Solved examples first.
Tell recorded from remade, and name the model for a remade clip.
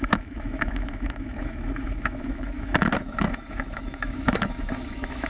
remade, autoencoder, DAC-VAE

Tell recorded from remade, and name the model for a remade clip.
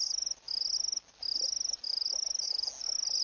recorded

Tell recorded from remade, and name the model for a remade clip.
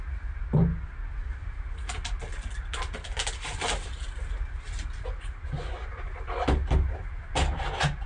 recorded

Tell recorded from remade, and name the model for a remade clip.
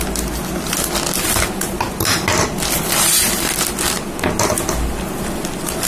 recorded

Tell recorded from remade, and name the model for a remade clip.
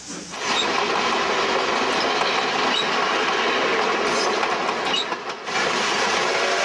recorded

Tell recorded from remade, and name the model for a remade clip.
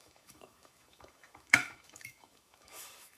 remade, autoencoder, DAC-VAE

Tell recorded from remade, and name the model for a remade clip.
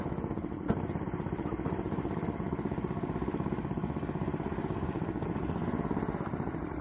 recorded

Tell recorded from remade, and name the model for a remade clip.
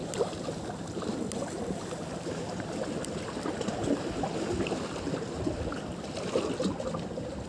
recorded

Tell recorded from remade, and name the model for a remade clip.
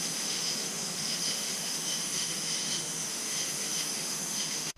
remade, autoencoder, DAC-VAE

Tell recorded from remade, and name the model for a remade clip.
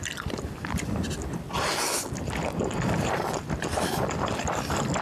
recorded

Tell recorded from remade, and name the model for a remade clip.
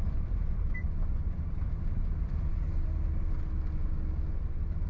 recorded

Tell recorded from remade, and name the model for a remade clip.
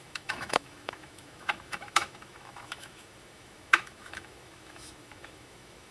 remade, autoencoder, DAC-VAE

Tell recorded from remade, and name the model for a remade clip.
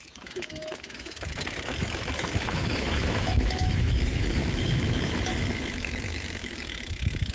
remade, autoencoder, DAC-VAE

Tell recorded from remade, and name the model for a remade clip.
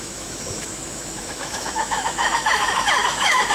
remade, autoencoder, DAC-VAE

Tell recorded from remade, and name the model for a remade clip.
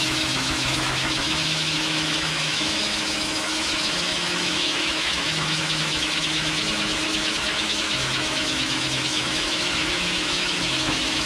remade, autoencoder, DAC-VAE